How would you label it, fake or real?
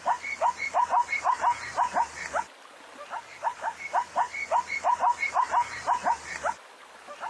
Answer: real